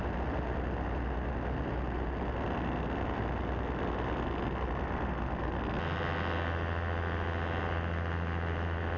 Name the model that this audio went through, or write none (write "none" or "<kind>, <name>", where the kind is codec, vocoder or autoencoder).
none